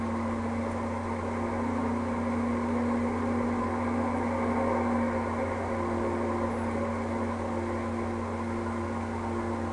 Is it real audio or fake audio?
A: real